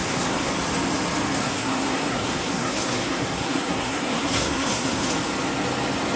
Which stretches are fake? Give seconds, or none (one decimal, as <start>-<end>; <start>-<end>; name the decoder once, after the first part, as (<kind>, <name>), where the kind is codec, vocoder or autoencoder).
0.0-0.5 (codec, SNAC); 1.4-5.1

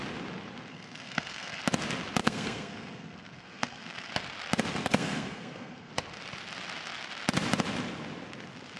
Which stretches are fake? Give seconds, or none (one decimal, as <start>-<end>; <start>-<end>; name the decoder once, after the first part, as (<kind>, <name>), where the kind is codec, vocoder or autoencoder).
0.7-1.6 (codec, SNAC); 2.2-4.1; 4.8-5.9